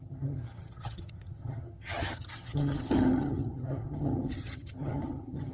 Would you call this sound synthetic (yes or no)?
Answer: yes